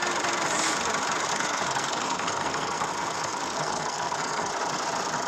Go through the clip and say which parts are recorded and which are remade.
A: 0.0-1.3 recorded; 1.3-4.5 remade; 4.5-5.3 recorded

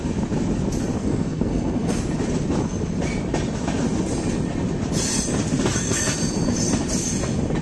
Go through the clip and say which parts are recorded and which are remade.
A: 0.0-1.0 recorded; 1.0-2.0 remade; 2.0-7.6 recorded

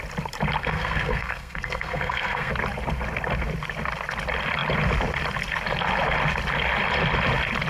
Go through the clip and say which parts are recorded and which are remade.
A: 0.0-0.6 recorded; 0.6-2.5 remade; 2.5-7.7 recorded

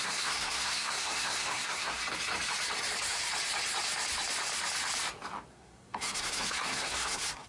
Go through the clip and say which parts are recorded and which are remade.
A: 0.0-2.0 remade; 2.0-5.5 recorded; 5.5-7.5 remade

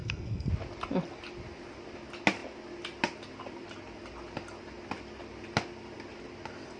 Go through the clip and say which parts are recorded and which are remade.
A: 0.0-0.5 remade; 0.5-6.8 recorded

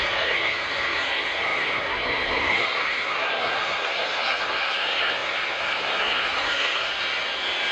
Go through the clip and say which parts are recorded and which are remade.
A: 0.0-6.9 remade; 6.9-7.7 recorded

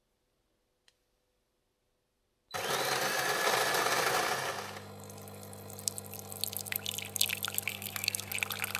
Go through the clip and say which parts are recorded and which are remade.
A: 0.0-7.7 recorded; 7.7-8.3 remade; 8.3-8.8 recorded

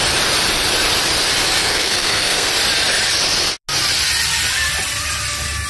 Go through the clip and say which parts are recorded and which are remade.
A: 0.0-1.6 recorded; 1.6-2.5 remade; 2.5-5.7 recorded